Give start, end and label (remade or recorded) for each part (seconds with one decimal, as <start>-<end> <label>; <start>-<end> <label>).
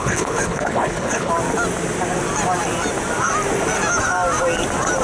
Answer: 0.0-1.3 remade; 1.3-5.0 recorded